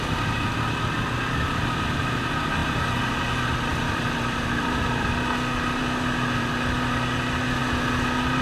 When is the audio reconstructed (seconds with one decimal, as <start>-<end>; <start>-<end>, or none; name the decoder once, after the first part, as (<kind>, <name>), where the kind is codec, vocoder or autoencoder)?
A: 3.7-5.1 (vocoder, BigVGAN v2)